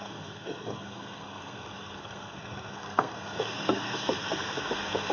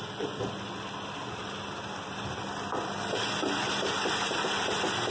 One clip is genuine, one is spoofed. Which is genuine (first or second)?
second